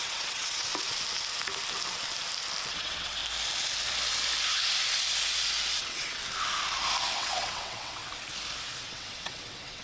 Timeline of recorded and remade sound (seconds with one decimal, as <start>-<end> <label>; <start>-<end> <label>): 0.0-0.7 remade; 0.7-2.7 recorded; 2.7-3.2 remade; 3.2-5.8 recorded; 5.8-6.2 remade; 6.2-7.2 recorded; 7.2-8.0 remade; 8.0-8.8 recorded; 8.8-9.8 remade